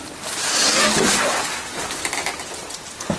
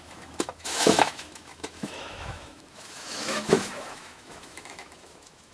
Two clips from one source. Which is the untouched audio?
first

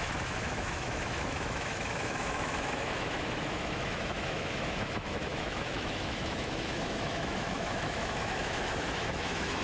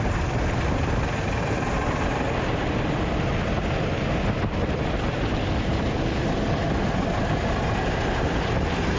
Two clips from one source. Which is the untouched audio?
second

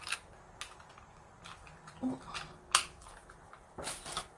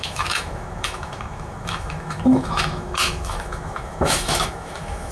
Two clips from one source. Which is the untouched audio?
first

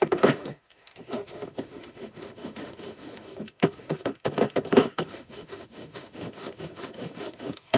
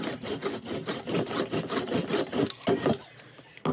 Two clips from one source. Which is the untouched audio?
second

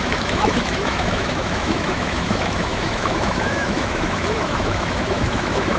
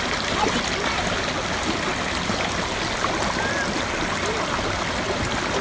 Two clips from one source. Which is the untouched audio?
second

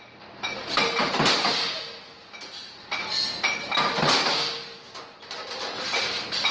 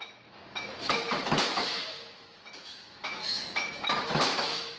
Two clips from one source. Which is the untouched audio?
first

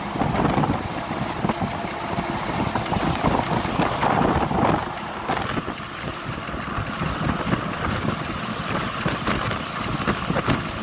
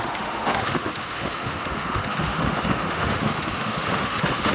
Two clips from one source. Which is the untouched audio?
first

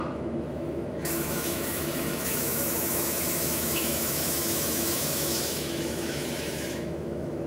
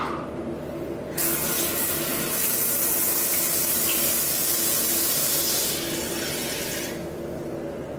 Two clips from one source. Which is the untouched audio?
second